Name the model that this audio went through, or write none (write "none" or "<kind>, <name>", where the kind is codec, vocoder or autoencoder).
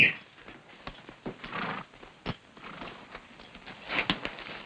none